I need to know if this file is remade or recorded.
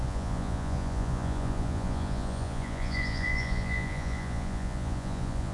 remade